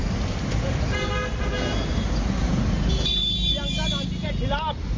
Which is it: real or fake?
real